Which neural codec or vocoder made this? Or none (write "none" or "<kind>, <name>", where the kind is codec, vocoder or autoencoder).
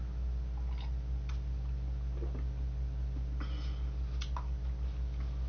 none